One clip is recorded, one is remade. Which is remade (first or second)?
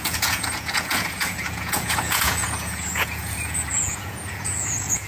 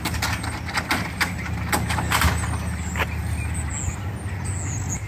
first